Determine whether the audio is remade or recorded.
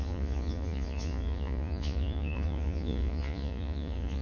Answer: remade